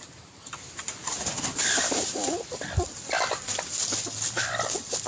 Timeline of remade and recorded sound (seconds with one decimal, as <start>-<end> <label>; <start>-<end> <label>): 0.0-5.1 recorded